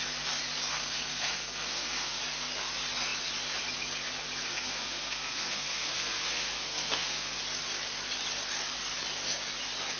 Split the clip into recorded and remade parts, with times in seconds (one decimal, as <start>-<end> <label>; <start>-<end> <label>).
0.0-0.7 recorded; 0.7-2.2 remade; 2.2-4.5 recorded; 4.5-7.4 remade; 7.4-10.0 recorded

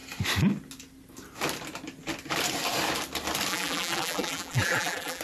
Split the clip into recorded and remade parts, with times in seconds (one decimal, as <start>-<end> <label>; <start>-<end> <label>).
0.0-3.5 recorded; 3.5-5.2 remade

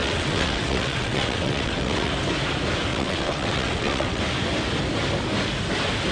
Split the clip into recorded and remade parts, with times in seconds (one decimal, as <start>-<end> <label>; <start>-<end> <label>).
0.0-2.1 remade; 2.1-2.9 recorded; 2.9-4.2 remade; 4.2-6.1 recorded

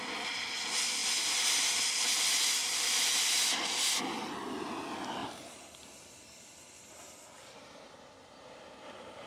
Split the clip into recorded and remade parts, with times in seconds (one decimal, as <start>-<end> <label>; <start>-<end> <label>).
0.0-2.6 recorded; 2.6-4.0 remade; 4.0-5.2 recorded; 5.2-7.7 remade; 7.7-9.3 recorded

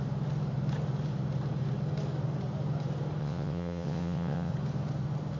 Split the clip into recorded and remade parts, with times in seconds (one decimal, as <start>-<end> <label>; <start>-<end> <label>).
0.0-3.2 recorded; 3.2-4.5 remade; 4.5-5.4 recorded